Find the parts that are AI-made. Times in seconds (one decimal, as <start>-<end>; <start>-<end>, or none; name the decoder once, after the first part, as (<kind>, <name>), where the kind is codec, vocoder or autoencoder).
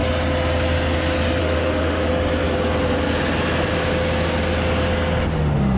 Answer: 1.4-2.1 (autoencoder, DAC-VAE)